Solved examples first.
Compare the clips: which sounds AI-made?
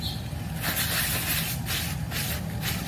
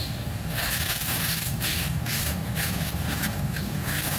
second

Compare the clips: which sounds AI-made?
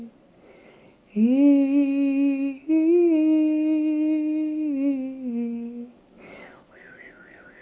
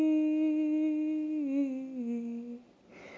first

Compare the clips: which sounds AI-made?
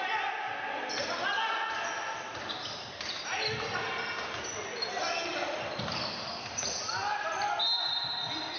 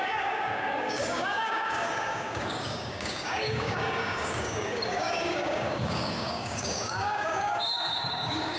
second